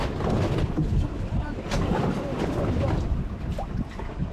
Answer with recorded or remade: recorded